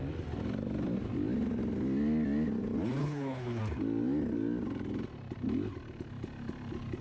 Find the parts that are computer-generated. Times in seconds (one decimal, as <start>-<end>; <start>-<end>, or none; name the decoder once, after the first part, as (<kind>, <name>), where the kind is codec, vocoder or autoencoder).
3.0-3.6 (codec, HILCodec)